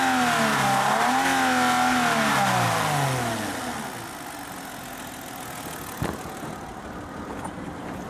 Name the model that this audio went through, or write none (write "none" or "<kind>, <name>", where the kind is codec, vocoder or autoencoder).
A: none